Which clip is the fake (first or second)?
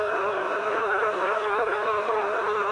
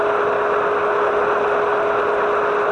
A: first